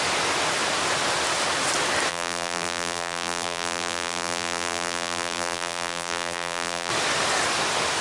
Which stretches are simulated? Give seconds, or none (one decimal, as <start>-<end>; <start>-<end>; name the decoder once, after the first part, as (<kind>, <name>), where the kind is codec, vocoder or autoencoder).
2.1-6.9 (vocoder, BigVGAN v2)